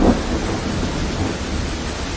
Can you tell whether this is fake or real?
real